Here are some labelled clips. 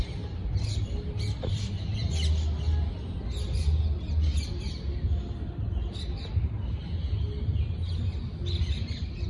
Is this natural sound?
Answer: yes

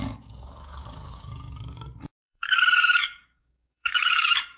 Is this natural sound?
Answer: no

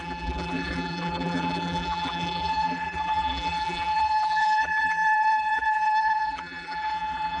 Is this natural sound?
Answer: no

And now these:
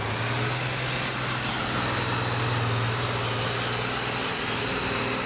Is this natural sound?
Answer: yes